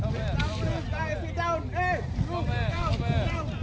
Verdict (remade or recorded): recorded